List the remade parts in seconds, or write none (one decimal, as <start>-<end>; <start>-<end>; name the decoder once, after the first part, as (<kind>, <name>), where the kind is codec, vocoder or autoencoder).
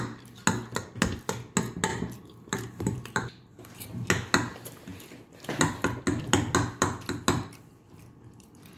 1.9-4.1 (vocoder, BigVGAN v2)